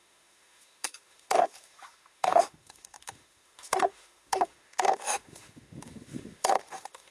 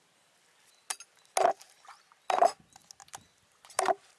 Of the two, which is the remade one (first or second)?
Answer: first